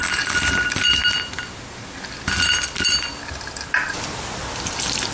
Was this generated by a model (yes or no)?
no